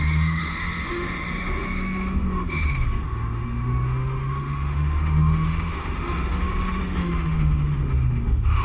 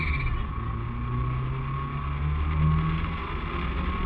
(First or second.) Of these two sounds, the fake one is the first